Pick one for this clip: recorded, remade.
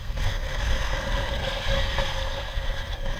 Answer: remade